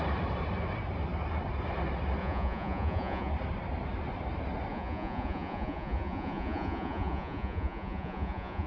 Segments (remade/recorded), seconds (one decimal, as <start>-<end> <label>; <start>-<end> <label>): 0.0-2.2 recorded; 2.2-3.3 remade; 3.3-4.7 recorded; 4.7-8.7 remade